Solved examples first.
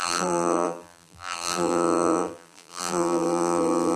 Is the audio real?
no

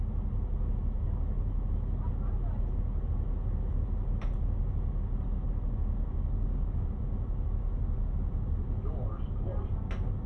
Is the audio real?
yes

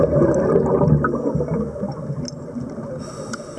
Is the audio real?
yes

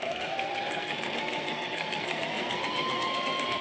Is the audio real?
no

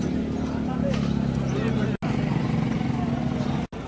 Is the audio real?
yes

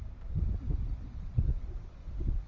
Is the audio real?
yes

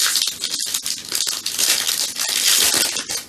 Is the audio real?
yes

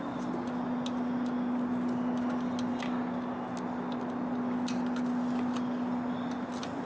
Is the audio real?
yes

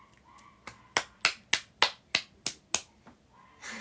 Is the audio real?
yes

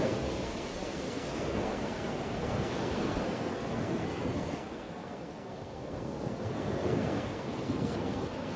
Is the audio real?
no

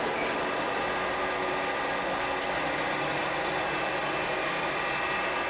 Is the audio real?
yes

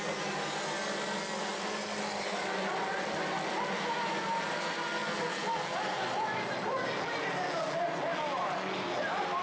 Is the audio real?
yes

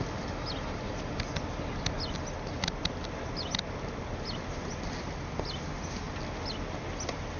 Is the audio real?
yes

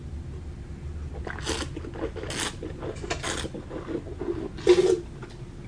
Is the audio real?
yes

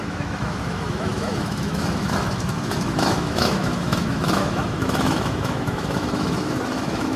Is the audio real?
no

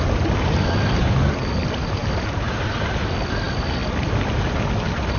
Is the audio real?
yes